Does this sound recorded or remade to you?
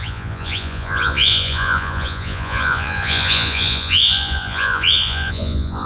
remade